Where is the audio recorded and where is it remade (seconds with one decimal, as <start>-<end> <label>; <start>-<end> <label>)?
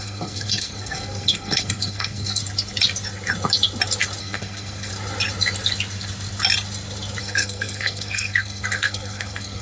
0.0-2.4 remade; 2.4-4.2 recorded; 4.2-4.9 remade; 4.9-7.2 recorded; 7.2-9.6 remade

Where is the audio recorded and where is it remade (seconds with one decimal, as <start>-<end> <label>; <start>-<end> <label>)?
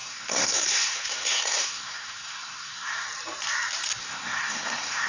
0.0-3.1 remade; 3.1-4.0 recorded; 4.0-5.1 remade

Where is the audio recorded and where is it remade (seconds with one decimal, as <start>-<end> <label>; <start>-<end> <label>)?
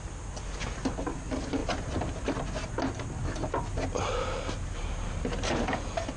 0.0-6.2 recorded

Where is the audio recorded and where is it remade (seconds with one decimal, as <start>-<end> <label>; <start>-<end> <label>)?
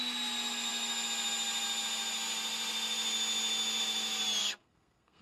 0.0-4.4 recorded; 4.4-5.2 remade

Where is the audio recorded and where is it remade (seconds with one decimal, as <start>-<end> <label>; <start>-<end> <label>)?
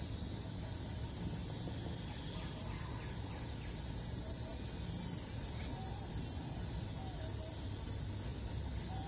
0.0-9.1 recorded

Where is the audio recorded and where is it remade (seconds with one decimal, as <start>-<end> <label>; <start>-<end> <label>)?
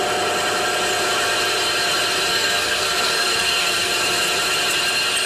0.0-2.3 recorded; 2.3-3.9 remade; 3.9-5.3 recorded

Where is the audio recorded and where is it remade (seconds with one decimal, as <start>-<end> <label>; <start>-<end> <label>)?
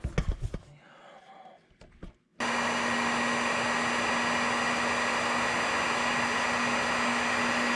0.0-7.8 recorded